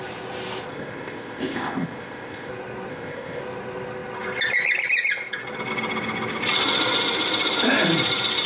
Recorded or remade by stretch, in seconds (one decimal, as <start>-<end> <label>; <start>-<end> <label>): 0.0-0.7 recorded; 0.7-2.5 remade; 2.5-2.9 recorded; 2.9-3.4 remade; 3.4-8.5 recorded